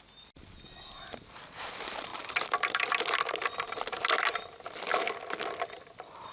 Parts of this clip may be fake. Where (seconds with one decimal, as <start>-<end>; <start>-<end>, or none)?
none